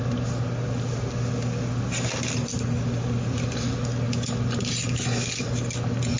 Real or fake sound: real